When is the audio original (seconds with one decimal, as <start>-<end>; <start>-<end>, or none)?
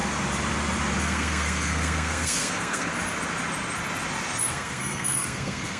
0.0-1.0; 2.9-4.5